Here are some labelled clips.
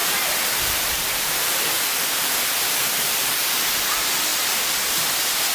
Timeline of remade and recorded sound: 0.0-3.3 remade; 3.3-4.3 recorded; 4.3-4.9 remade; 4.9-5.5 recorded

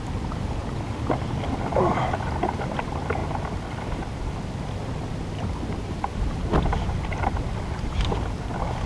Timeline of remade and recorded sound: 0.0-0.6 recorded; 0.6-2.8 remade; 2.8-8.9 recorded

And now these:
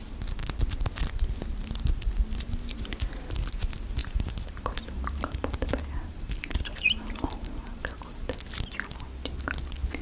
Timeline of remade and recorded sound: 0.0-4.0 recorded; 4.0-8.3 remade; 8.3-10.0 recorded